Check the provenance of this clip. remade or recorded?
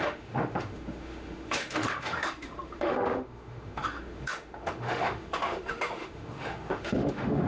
remade